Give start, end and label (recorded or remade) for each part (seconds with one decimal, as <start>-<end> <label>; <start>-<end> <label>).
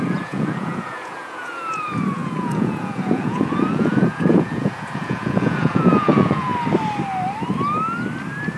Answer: 0.0-6.5 remade; 6.5-8.6 recorded